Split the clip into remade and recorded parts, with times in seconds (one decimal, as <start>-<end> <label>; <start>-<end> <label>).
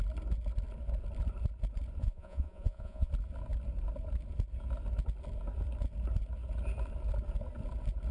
0.0-2.0 recorded; 2.0-3.1 remade; 3.1-8.1 recorded